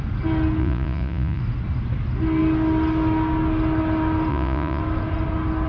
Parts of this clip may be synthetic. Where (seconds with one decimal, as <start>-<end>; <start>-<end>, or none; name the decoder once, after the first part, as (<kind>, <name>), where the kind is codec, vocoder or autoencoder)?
0.6-1.4 (vocoder, Vocos); 4.3-4.8